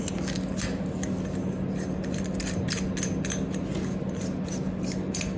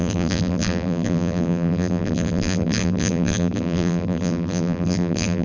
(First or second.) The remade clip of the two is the second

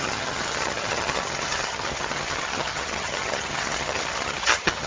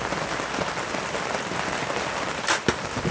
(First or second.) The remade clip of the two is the first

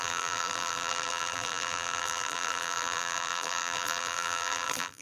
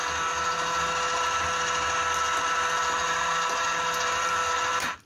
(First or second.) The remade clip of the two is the first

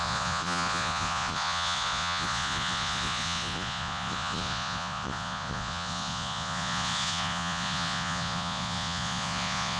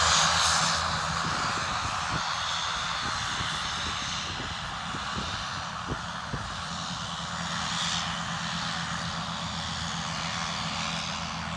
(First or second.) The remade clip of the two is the first